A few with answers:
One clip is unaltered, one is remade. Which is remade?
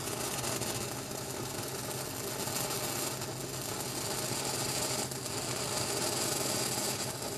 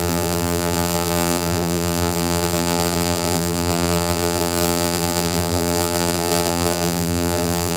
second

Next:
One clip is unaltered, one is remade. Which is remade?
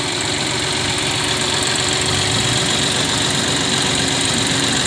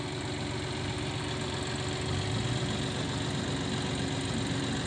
first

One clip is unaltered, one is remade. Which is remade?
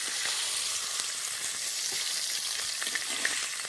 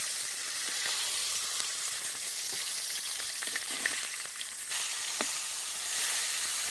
second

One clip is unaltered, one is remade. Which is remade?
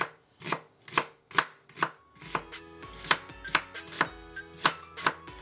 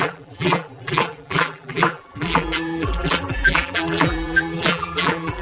second